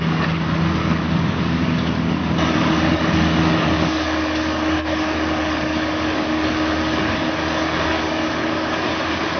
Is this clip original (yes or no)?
no